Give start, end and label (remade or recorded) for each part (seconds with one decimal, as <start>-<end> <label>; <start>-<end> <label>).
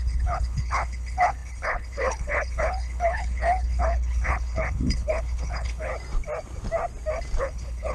0.0-5.9 remade; 5.9-7.4 recorded; 7.4-7.9 remade